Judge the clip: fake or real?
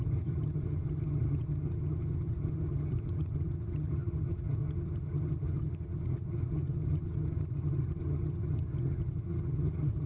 fake